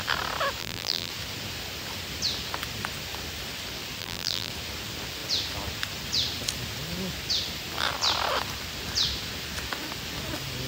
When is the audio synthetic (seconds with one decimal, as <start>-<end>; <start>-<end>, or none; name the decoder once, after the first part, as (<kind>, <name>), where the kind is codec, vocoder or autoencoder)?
0.6-1.1 (vocoder, BigVGAN v2); 4.0-4.5